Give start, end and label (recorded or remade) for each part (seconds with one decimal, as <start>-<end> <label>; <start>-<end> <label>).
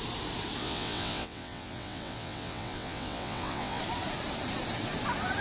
0.0-0.6 recorded; 0.6-3.8 remade; 3.8-5.4 recorded